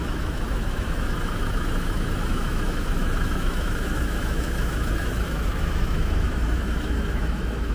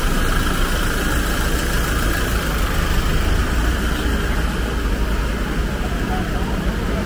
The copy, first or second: first